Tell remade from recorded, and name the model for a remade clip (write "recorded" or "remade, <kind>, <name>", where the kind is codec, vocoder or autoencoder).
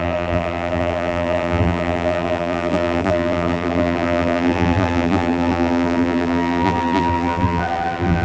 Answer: remade, vocoder, BigVGAN v2